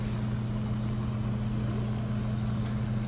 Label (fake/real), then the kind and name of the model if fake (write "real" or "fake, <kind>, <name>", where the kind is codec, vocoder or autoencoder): real